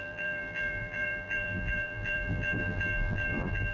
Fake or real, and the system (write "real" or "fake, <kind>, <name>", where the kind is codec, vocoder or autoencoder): fake, vocoder, BigVGAN v2